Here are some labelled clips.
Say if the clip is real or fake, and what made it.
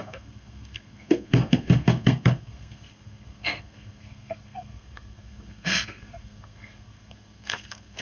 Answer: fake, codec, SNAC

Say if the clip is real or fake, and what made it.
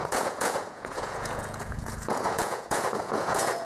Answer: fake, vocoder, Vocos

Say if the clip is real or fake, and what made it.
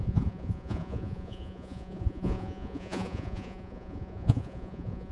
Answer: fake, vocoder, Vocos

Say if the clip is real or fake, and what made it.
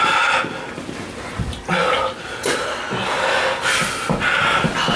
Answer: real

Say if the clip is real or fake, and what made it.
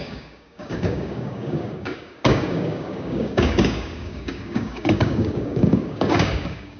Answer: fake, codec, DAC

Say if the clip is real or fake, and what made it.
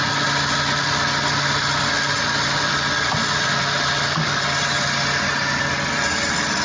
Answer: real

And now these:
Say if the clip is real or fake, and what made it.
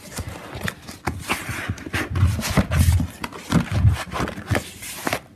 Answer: real